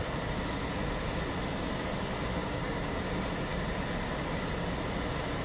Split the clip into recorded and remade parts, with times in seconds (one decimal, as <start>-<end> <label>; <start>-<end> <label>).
0.0-2.4 recorded; 2.4-3.0 remade; 3.0-5.4 recorded